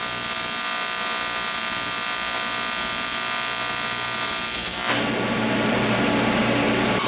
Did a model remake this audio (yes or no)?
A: no